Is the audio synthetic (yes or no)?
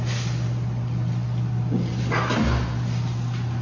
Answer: no